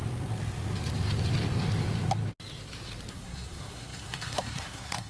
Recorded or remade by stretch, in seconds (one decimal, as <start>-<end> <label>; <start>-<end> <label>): 0.0-3.1 recorded; 3.1-5.1 remade